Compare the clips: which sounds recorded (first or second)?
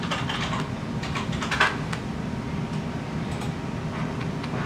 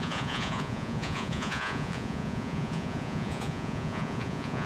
first